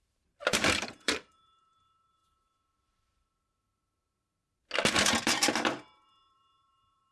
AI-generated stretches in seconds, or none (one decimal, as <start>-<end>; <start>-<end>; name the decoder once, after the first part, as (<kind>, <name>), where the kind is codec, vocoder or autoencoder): 0.0-2.2 (vocoder, BigVGAN v2); 5.2-7.1